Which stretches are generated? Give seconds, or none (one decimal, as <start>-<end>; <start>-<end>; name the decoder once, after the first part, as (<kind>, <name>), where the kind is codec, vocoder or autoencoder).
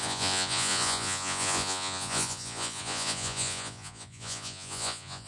0.0-5.3 (vocoder, Vocos)